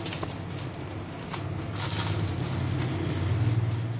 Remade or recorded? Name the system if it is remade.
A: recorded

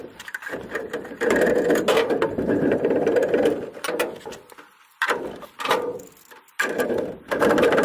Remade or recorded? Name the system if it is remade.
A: remade, vocoder, BigVGAN v2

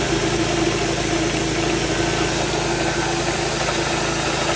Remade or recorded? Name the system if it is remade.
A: recorded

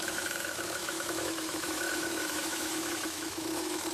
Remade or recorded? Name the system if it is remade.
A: remade, autoencoder, DAC-VAE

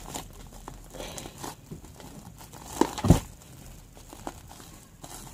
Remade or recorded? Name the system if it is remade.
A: remade, vocoder, BigVGAN v2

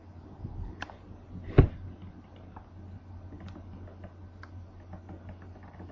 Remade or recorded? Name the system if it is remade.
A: recorded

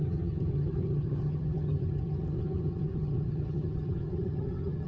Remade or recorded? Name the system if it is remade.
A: remade, vocoder, HiFi-GAN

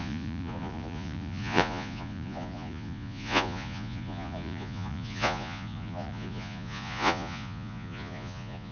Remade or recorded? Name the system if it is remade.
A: remade, vocoder, Vocos